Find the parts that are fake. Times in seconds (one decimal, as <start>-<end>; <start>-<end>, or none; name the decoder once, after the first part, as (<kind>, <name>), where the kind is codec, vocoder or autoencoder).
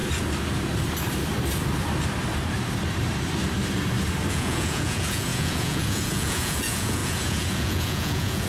4.3-8.5 (vocoder, Vocos)